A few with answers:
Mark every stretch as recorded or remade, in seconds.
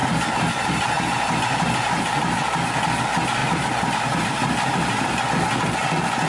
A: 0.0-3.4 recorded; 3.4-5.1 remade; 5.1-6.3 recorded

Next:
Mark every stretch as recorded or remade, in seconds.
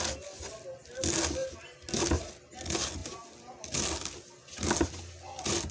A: 0.0-5.7 recorded